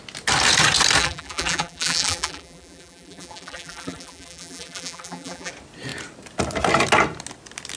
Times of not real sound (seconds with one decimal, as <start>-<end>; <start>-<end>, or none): 1.0-5.5